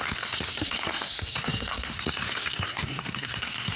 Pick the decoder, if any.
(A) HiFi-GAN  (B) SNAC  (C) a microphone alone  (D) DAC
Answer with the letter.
B